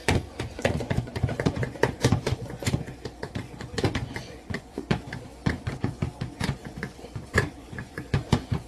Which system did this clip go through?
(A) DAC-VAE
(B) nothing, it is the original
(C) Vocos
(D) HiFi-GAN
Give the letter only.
C